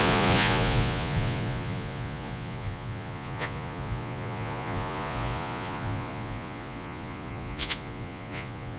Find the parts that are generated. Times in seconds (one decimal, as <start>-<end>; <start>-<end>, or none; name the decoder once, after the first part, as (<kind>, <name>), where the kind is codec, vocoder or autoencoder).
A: 0.0-8.8 (vocoder, Vocos)